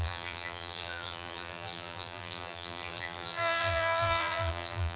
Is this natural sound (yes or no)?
no